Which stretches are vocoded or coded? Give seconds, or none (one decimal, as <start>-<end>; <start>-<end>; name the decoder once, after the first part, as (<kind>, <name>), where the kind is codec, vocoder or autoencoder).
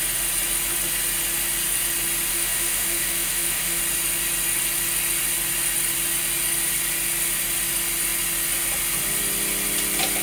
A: 2.3-3.8 (autoencoder, DAC-VAE)